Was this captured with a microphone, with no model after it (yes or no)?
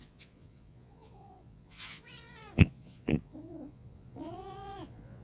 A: no